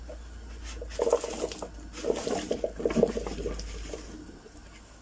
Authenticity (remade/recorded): recorded